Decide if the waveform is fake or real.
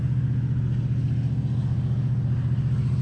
real